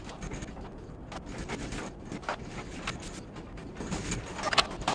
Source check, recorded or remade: recorded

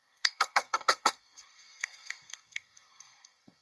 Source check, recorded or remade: remade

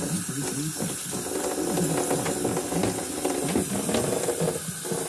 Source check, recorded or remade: recorded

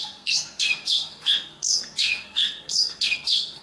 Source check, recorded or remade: remade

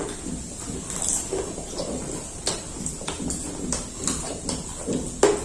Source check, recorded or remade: recorded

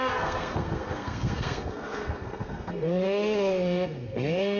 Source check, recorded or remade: remade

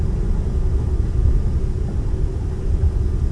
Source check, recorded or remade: recorded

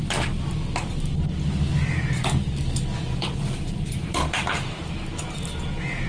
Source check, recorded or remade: recorded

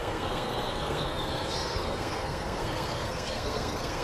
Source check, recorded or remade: remade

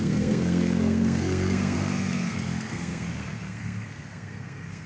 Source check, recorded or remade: remade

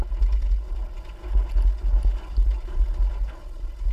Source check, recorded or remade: recorded